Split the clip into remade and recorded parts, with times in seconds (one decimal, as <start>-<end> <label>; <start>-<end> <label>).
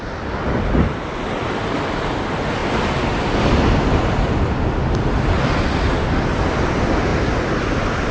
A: 0.0-2.6 recorded; 2.6-5.4 remade; 5.4-7.1 recorded; 7.1-7.6 remade; 7.6-8.1 recorded